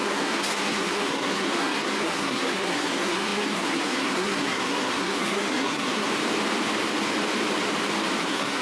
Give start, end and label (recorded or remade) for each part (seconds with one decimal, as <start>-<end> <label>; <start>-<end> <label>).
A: 0.0-6.1 remade; 6.1-8.2 recorded; 8.2-8.6 remade